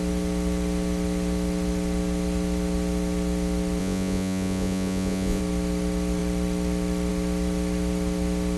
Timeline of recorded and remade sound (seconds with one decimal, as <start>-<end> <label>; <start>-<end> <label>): 0.0-3.8 recorded; 3.8-5.4 remade; 5.4-8.6 recorded